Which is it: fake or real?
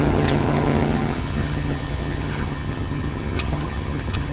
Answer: fake